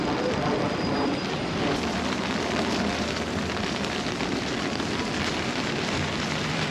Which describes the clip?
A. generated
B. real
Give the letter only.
A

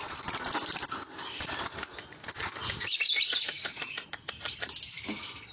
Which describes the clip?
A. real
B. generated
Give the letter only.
A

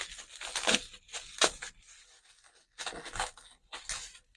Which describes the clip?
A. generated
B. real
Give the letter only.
B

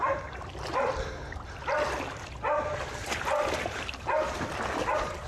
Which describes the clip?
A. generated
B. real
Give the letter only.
B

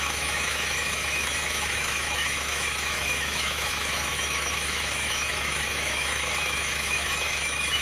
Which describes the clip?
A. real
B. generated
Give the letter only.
B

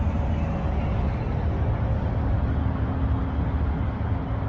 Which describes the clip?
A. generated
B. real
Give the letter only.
B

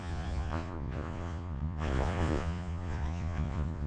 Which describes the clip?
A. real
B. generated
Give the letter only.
B